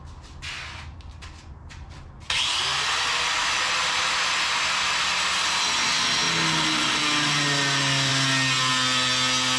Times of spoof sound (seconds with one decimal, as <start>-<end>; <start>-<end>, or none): none